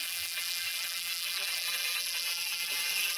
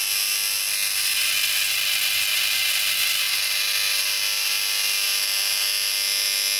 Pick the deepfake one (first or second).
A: first